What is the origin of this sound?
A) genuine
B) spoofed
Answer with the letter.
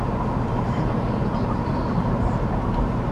B